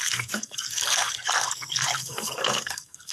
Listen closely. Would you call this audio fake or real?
fake